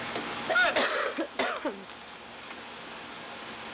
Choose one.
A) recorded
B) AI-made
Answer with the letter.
A